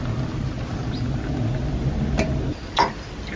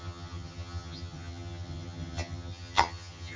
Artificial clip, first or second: second